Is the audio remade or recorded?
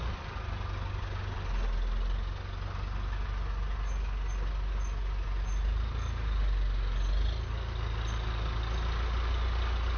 recorded